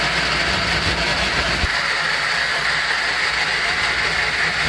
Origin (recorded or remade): recorded